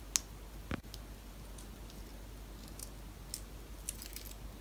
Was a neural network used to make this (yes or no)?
no